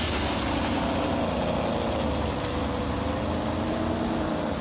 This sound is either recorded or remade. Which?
recorded